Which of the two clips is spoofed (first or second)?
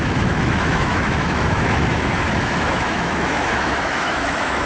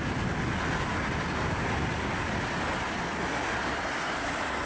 first